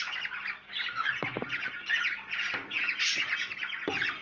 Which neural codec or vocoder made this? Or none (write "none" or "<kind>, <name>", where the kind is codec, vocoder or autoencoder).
none